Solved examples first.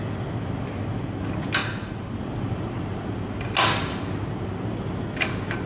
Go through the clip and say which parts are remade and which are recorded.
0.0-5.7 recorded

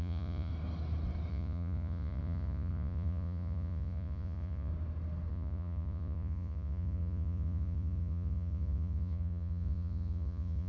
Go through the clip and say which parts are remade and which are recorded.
0.0-0.5 remade; 0.5-1.3 recorded; 1.3-4.7 remade; 4.7-5.3 recorded; 5.3-10.7 remade

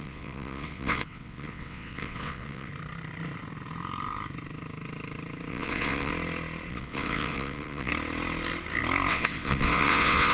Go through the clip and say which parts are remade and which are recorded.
0.0-2.7 remade; 2.7-5.5 recorded; 5.5-6.1 remade; 6.1-6.7 recorded; 6.7-7.9 remade; 7.9-9.1 recorded; 9.1-10.3 remade